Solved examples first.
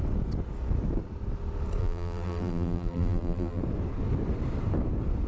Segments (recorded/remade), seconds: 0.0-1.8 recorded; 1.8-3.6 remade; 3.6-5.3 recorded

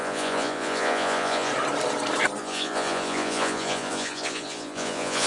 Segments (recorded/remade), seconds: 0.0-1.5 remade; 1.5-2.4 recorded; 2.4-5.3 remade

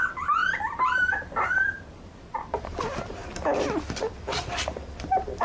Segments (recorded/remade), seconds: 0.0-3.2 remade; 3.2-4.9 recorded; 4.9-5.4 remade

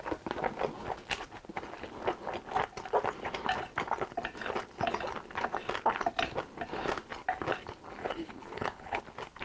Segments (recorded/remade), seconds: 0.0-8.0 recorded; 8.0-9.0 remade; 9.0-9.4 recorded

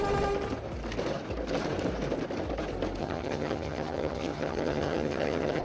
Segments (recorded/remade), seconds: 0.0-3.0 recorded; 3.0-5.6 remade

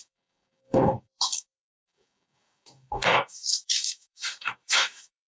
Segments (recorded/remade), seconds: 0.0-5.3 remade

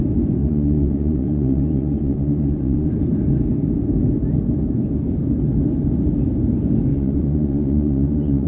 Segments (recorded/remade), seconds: 0.0-0.4 recorded; 0.4-2.9 remade; 2.9-6.9 recorded; 6.9-8.5 remade